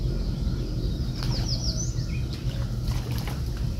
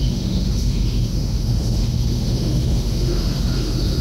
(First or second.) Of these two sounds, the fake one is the second